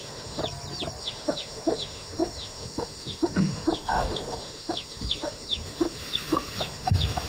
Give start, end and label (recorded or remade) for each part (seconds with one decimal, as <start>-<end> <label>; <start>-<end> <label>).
0.0-0.4 remade; 0.4-1.0 recorded; 1.0-7.3 remade